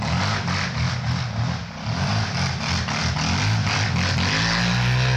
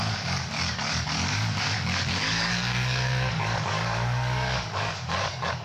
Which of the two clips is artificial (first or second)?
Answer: second